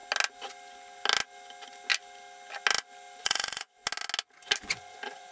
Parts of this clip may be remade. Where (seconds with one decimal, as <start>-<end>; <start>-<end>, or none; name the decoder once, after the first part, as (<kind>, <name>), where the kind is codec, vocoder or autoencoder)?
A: 3.2-3.8 (vocoder, Vocos); 4.6-5.3